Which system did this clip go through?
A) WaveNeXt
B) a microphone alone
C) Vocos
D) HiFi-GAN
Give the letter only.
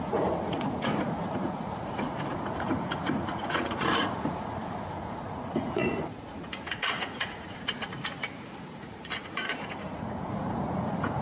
C